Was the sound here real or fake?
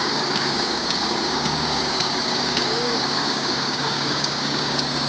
fake